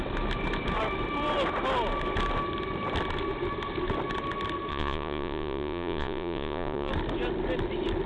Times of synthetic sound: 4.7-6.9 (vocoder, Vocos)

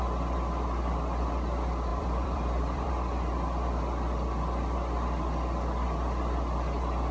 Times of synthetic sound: 1.9-2.9 (vocoder, BigVGAN v2)

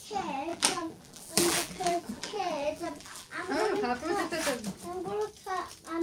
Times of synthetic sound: 0.5-3.8 (vocoder, BigVGAN v2)